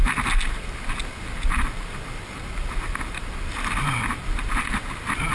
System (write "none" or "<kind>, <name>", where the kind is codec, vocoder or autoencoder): none